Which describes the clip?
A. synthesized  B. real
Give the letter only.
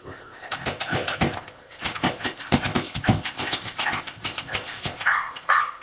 A